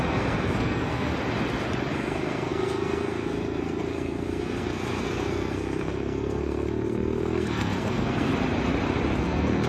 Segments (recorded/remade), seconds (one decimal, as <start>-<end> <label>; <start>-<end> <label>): 0.0-1.1 remade; 1.1-1.9 recorded; 1.9-8.3 remade; 8.3-9.2 recorded; 9.2-9.7 remade